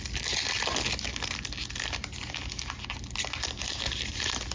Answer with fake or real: real